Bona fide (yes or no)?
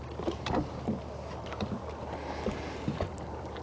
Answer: yes